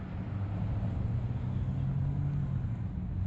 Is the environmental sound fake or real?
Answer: real